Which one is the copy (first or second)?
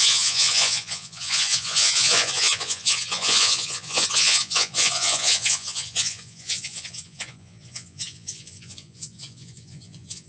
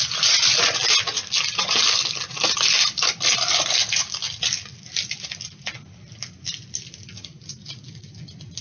first